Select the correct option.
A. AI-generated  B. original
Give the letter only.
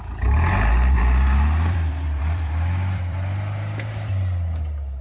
B